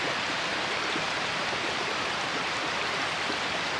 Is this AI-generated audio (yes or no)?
yes